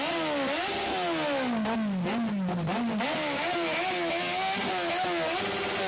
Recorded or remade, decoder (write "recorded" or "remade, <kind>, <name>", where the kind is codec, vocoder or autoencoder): recorded